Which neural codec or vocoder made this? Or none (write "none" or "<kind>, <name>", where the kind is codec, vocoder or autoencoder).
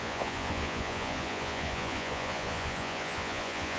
vocoder, Vocos